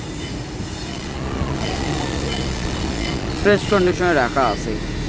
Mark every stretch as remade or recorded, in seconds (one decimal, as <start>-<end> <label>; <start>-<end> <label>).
0.0-0.9 recorded; 0.9-4.0 remade; 4.0-5.1 recorded